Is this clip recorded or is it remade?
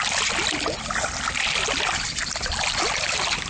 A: recorded